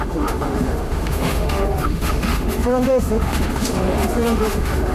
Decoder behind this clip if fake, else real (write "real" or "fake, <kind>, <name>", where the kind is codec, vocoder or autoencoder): fake, autoencoder, DAC-VAE